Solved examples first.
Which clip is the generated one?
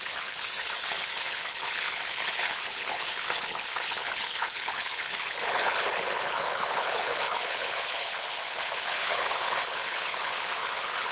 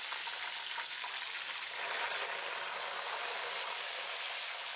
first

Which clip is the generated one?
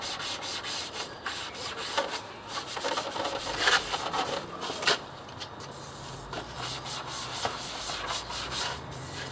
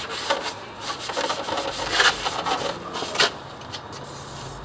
first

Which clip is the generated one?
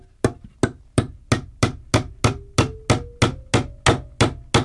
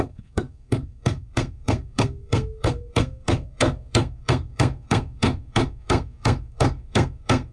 second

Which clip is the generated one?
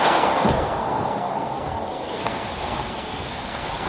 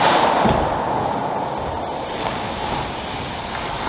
first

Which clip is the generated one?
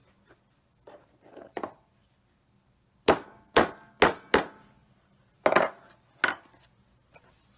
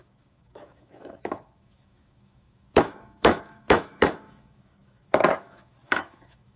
second